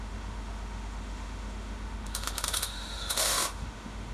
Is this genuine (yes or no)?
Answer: no